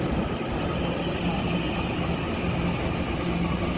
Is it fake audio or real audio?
real